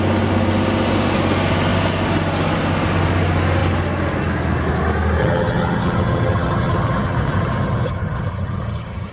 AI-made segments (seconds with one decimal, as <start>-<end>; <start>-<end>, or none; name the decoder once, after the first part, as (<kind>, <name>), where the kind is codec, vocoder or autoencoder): 5.2-9.1 (vocoder, HiFi-GAN)